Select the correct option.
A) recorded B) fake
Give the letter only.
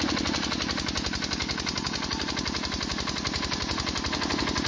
A